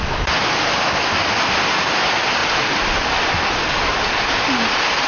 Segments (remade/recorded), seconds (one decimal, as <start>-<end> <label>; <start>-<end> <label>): 0.0-5.1 recorded